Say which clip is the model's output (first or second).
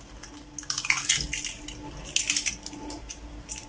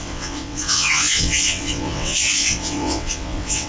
second